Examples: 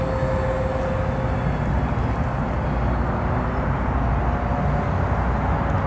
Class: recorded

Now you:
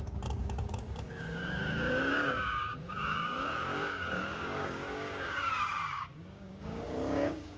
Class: remade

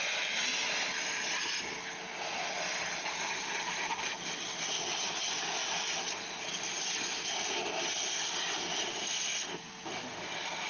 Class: recorded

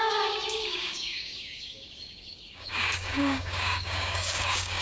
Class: remade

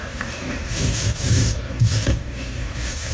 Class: remade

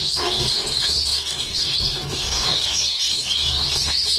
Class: remade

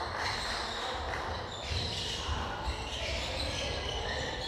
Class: recorded